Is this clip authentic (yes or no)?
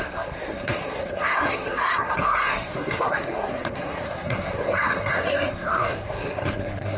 no